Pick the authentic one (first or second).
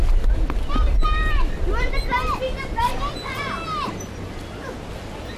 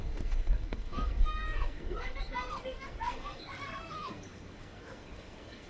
first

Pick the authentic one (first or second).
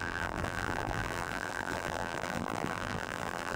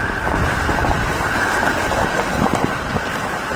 second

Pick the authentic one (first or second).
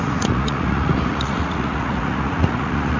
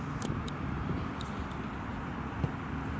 second